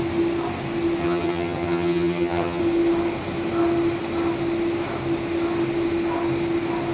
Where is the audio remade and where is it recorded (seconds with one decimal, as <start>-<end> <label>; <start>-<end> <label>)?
0.0-1.0 recorded; 1.0-2.6 remade; 2.6-6.9 recorded